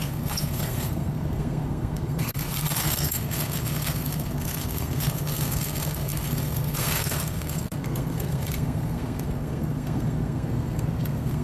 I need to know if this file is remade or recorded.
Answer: remade